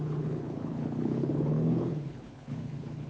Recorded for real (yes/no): no